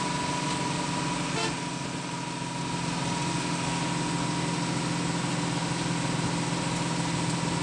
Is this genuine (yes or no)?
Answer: yes